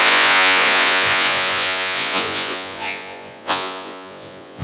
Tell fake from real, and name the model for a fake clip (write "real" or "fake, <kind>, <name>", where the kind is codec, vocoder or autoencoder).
fake, vocoder, Vocos